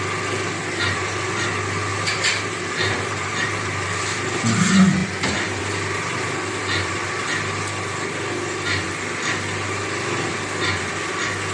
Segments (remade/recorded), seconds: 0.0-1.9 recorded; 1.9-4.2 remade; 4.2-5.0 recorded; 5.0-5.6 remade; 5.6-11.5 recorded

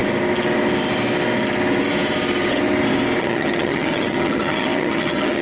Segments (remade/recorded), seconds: 0.0-3.2 recorded; 3.2-5.4 remade

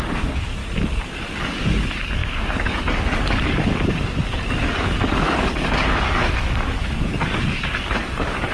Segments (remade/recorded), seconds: 0.0-0.6 remade; 0.6-1.4 recorded; 1.4-8.5 remade